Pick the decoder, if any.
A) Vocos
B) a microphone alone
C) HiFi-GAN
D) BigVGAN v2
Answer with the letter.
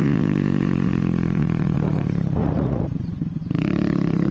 A